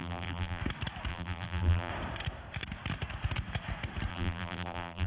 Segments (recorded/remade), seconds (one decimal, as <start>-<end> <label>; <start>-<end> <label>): 0.0-0.6 remade; 0.6-1.1 recorded; 1.1-1.9 remade; 1.9-4.1 recorded; 4.1-5.1 remade